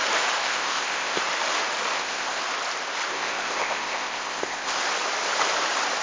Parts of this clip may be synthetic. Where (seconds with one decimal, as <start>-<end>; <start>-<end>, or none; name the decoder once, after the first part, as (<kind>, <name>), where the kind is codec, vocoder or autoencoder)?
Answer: 0.4-1.2 (codec, ZipCodec); 1.9-2.4; 3.1-4.8